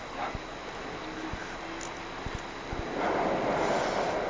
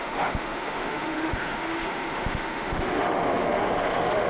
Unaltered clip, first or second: first